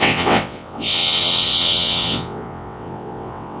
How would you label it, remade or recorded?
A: remade